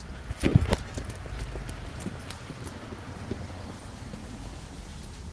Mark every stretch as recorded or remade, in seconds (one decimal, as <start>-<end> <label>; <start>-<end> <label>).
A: 0.0-4.2 remade; 4.2-5.3 recorded